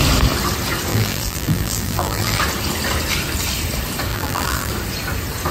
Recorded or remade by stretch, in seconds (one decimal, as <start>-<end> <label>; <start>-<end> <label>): 0.0-0.9 recorded; 0.9-2.4 remade; 2.4-4.1 recorded; 4.1-4.7 remade; 4.7-5.5 recorded